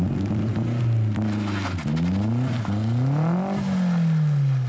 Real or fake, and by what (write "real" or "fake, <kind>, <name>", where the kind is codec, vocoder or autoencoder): real